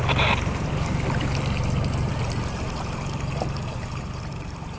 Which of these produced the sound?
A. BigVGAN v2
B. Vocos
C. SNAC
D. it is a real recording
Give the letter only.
D